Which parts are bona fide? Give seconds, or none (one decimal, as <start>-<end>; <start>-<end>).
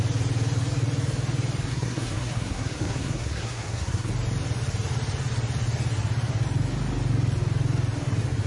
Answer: 0.0-1.7; 4.1-8.5